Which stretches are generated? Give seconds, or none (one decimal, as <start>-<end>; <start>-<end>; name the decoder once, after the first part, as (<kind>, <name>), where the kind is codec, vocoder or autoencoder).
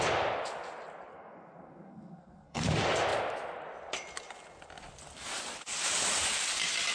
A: 1.1-2.6 (codec, SNAC)